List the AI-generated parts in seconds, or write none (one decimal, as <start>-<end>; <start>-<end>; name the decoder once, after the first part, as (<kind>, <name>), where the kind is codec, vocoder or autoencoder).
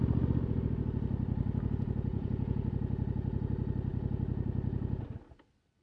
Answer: 2.1-2.7 (vocoder, Vocos)